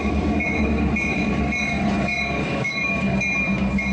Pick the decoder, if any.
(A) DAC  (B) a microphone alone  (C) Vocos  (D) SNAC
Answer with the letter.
A